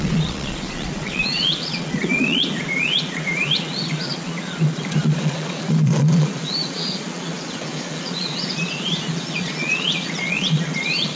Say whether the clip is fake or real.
fake